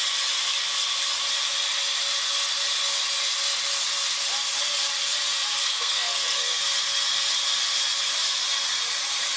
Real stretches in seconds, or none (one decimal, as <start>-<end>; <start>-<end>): 0.0-5.6; 6.6-9.4